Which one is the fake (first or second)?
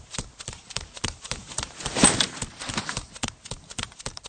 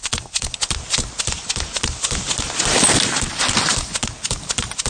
first